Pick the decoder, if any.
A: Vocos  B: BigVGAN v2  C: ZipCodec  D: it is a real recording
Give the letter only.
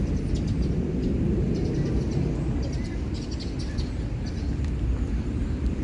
D